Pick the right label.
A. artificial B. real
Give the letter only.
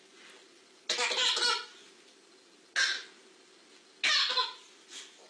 B